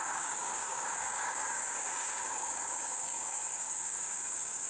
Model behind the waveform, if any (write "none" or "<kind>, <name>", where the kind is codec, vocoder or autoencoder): codec, DAC